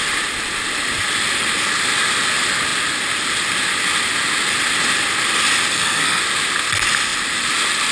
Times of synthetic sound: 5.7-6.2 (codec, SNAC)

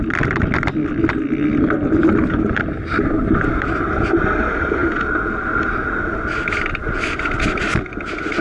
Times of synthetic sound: none

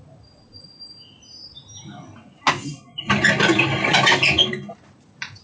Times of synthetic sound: none

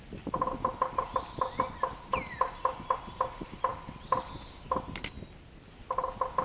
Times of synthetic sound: none

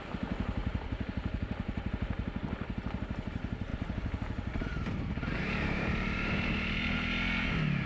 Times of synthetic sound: 0.6-1.9 (vocoder, BigVGAN v2); 3.7-6.3